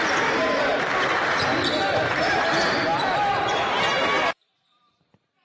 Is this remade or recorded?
recorded